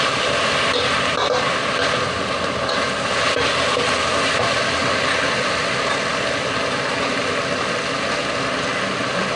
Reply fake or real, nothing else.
real